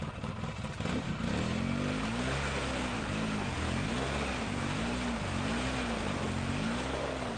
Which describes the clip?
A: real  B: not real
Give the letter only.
A